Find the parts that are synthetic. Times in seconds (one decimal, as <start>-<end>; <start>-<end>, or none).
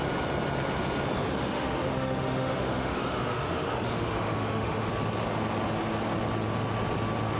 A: 1.2-4.9